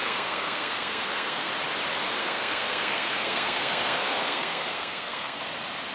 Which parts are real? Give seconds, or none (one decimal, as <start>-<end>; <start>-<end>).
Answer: 1.5-2.2; 5.4-5.9